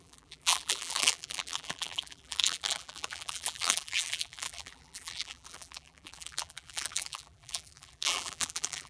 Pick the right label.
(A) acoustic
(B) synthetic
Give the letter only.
B